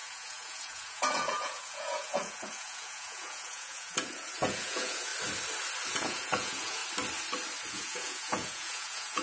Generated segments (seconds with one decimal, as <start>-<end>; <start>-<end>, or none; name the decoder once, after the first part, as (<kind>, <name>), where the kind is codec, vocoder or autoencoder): 0.0-5.1 (vocoder, Vocos); 5.9-6.8; 7.7-9.2